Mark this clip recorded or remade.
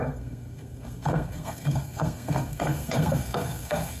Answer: remade